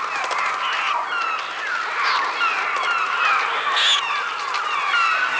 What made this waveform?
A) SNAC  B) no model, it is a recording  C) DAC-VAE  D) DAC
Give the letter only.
B